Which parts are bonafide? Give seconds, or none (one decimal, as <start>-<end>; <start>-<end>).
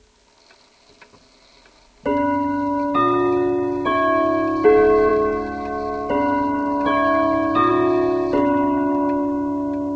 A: 0.0-10.0